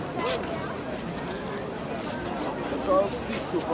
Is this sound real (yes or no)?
yes